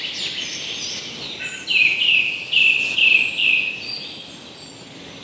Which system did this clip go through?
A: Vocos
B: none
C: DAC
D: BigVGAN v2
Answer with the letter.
B